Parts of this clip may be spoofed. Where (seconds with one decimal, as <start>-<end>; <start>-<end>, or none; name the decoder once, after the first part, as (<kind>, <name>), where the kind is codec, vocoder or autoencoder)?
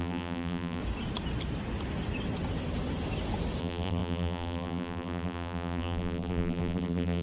0.0-0.8 (vocoder, BigVGAN v2); 3.6-7.2